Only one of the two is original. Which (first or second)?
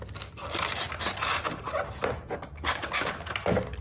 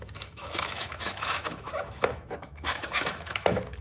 first